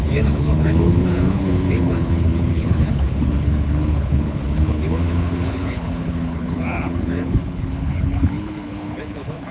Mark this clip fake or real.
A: fake